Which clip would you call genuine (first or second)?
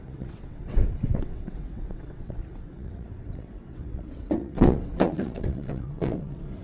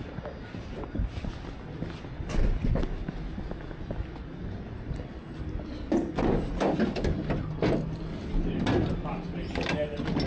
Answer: second